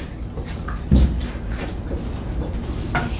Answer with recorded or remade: recorded